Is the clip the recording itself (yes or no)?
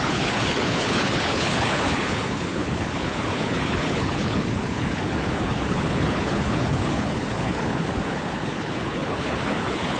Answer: no